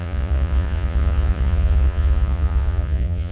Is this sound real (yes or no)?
no